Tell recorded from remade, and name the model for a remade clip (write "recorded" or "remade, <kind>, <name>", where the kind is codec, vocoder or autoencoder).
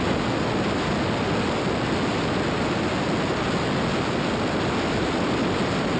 recorded